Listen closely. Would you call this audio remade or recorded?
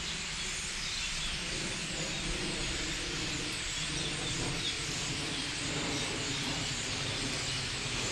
recorded